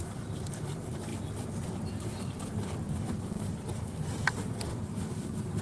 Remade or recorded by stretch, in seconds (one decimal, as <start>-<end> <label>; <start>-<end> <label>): 0.0-1.1 remade; 1.1-4.5 recorded; 4.5-5.6 remade